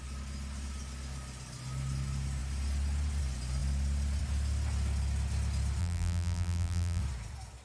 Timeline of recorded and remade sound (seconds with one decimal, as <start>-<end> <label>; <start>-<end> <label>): 0.0-5.8 recorded; 5.8-7.0 remade; 7.0-7.6 recorded

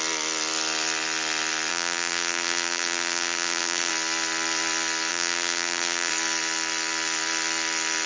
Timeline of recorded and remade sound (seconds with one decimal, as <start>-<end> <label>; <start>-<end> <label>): 0.0-1.7 recorded; 1.7-3.9 remade; 3.9-5.1 recorded; 5.1-6.1 remade; 6.1-8.1 recorded

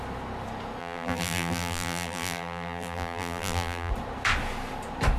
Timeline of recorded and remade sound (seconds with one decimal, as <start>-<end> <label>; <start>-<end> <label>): 0.0-0.8 recorded; 0.8-3.9 remade; 3.9-5.2 recorded

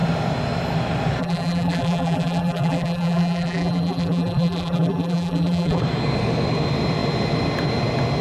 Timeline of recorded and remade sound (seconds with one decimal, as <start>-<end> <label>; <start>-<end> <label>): 0.0-1.2 recorded; 1.2-5.8 remade; 5.8-8.2 recorded

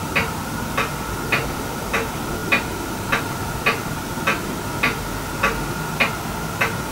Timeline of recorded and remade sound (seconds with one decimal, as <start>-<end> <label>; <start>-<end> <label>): 0.0-6.9 recorded

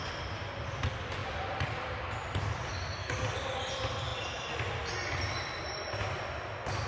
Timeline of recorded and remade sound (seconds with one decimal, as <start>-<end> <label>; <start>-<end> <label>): 0.0-4.1 remade; 4.1-5.3 recorded; 5.3-6.9 remade

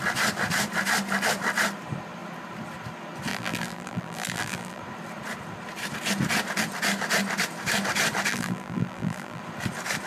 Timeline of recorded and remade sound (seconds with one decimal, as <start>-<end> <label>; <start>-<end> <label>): 0.0-3.3 recorded; 3.3-4.8 remade; 4.8-8.3 recorded; 8.3-9.4 remade; 9.4-10.1 recorded

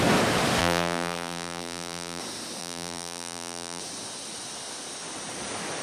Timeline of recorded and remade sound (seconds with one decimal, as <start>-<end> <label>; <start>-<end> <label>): 0.0-0.6 recorded; 0.6-2.2 remade; 2.2-2.6 recorded; 2.6-3.8 remade; 3.8-5.8 recorded